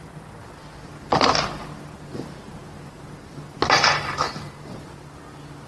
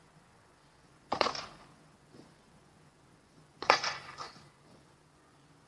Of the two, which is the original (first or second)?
first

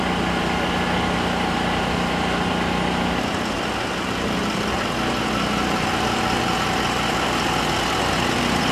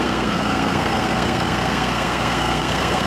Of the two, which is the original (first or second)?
first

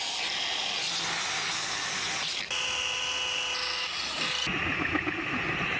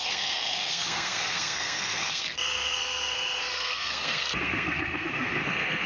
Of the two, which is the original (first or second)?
first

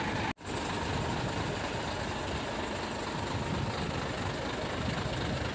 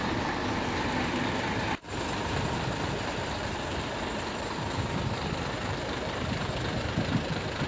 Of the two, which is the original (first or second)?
first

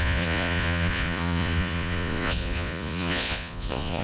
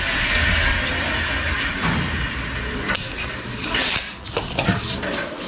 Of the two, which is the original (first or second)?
second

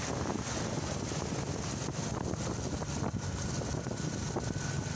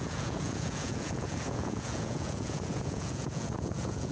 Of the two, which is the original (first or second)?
first